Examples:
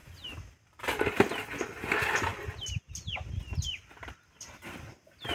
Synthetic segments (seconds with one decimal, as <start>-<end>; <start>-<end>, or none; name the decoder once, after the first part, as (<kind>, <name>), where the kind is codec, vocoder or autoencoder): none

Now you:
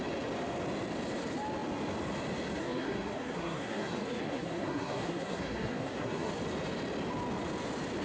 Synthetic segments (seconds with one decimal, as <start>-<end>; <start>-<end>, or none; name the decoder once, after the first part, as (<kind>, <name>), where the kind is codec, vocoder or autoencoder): 2.6-6.3 (codec, SNAC)

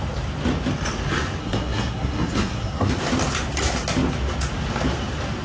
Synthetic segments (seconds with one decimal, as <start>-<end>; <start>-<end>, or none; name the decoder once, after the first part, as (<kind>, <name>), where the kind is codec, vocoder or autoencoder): 1.4-2.9 (codec, SNAC)

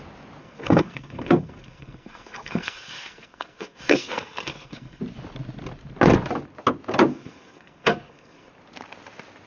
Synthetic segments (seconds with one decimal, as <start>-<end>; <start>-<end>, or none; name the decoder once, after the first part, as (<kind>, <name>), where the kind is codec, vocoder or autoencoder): 0.4-5.0 (codec, SNAC); 7.1-8.5

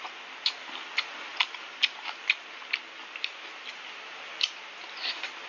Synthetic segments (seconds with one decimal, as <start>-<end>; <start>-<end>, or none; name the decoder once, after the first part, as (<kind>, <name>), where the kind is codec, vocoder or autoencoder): none

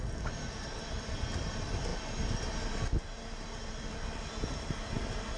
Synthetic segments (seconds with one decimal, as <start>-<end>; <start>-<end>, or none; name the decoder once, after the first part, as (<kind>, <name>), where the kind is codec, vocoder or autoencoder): none

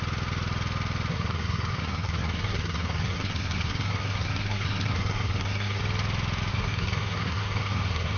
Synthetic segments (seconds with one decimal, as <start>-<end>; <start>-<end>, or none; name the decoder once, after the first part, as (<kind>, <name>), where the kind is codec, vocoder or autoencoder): 1.1-5.8 (codec, SNAC); 6.5-8.2

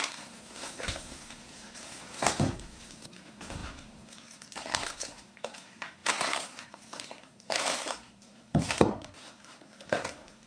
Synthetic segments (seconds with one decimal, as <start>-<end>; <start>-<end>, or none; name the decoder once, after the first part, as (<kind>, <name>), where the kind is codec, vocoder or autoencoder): 0.0-10.5 (codec, SNAC)